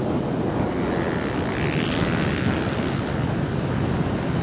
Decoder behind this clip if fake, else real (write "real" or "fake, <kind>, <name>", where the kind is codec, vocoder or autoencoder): real